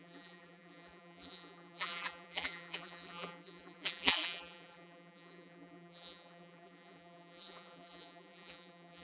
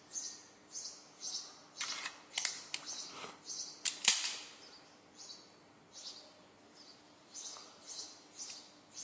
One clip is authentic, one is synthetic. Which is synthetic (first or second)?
first